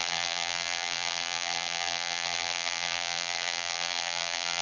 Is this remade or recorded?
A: remade